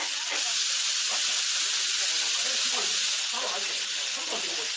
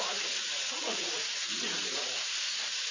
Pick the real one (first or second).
first